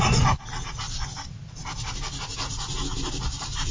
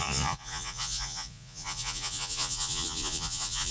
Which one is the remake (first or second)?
second